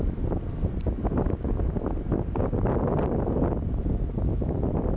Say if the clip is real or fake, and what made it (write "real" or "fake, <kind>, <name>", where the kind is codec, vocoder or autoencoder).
real